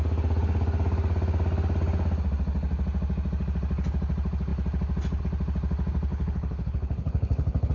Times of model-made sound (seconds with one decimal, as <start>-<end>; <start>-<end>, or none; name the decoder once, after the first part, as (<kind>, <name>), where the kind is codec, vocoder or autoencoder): 6.1-7.7 (codec, HILCodec)